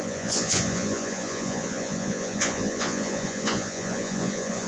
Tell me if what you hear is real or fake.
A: fake